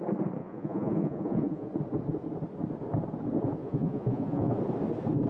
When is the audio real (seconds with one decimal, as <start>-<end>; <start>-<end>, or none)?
0.0-0.4; 1.7-3.6; 4.6-5.3